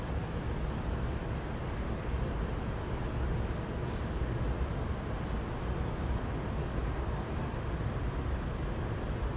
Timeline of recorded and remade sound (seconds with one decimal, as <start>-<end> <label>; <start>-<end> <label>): 0.0-9.4 recorded

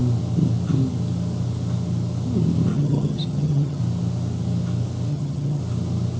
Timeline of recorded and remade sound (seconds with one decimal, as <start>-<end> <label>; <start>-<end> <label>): 0.0-2.7 recorded; 2.7-3.8 remade; 3.8-5.1 recorded; 5.1-5.6 remade; 5.6-6.2 recorded

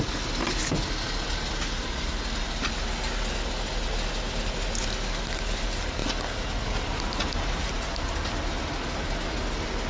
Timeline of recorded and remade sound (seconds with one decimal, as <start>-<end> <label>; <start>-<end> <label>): 0.0-9.9 recorded

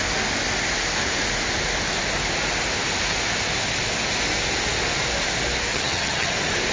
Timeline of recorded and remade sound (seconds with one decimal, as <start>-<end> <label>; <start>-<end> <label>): 0.0-5.7 recorded; 5.7-6.3 remade; 6.3-6.7 recorded